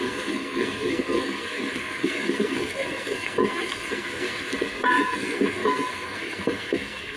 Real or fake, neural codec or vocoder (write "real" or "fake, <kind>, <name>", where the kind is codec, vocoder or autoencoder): fake, codec, SNAC